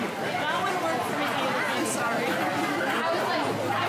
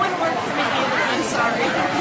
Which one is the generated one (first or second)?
second